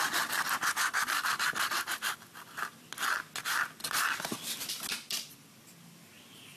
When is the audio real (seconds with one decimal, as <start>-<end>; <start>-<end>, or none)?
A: 0.0-6.6